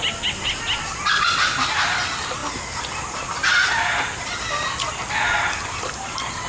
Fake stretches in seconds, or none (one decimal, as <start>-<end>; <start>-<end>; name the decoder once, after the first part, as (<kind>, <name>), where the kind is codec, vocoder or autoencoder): none